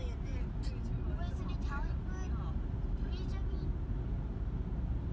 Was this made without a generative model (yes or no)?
yes